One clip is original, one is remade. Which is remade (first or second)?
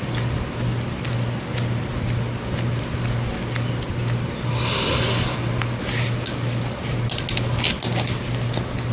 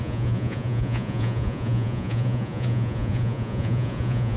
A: second